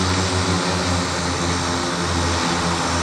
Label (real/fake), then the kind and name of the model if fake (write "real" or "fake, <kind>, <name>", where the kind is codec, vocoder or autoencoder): real